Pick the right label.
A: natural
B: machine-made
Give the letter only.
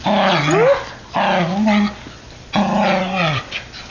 A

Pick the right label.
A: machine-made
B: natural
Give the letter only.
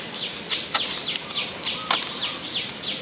B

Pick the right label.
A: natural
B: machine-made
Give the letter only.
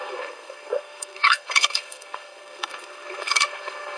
B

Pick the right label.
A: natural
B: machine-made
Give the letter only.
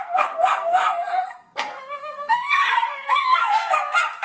B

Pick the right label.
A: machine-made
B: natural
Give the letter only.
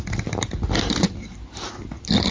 B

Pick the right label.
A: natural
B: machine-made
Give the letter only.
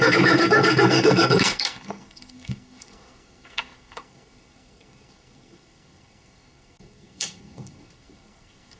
B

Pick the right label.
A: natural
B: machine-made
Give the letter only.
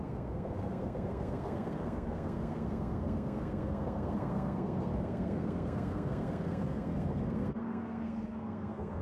B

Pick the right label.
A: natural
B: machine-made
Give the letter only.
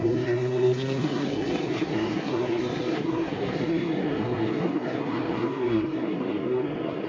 B